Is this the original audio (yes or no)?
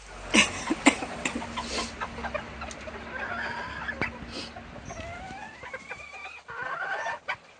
yes